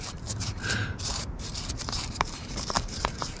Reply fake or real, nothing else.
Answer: fake